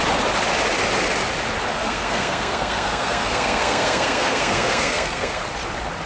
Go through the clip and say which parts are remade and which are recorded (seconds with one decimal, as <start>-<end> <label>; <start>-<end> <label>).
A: 0.0-1.7 recorded; 1.7-5.4 remade; 5.4-6.1 recorded